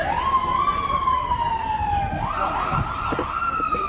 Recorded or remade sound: recorded